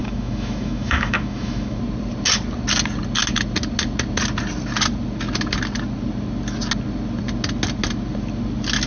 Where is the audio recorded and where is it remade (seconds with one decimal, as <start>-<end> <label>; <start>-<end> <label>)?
0.0-1.8 remade; 1.8-8.9 recorded